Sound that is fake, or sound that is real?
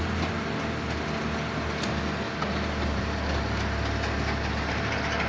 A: real